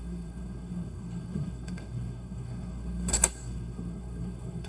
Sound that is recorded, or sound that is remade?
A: remade